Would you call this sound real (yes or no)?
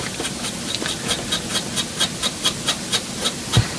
yes